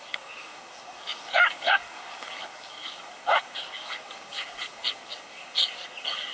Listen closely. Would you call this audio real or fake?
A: fake